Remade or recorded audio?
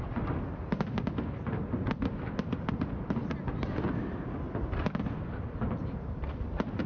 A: recorded